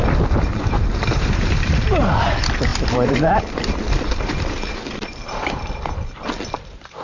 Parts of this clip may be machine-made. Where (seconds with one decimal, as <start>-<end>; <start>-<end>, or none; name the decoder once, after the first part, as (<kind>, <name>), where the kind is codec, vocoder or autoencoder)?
0.5-2.3 (vocoder, BigVGAN v2); 2.7-5.8